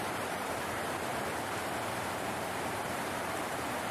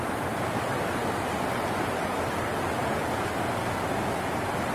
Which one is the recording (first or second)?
second